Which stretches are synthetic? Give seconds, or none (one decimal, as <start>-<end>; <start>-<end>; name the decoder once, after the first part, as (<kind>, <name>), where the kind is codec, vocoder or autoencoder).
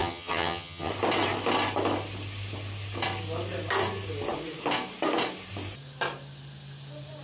0.0-0.9 (vocoder, HiFi-GAN)